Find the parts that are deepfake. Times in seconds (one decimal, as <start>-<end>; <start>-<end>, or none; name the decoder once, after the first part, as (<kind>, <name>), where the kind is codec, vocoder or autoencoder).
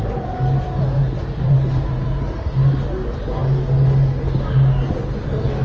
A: 1.0-2.4 (vocoder, BigVGAN v2)